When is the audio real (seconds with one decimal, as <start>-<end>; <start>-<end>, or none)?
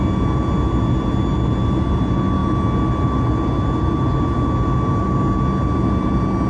0.0-6.5